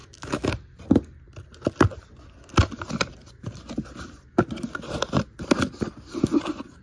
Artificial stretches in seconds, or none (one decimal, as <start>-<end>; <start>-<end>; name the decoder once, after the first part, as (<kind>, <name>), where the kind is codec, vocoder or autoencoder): 0.0-0.5 (autoencoder, DAC-VAE)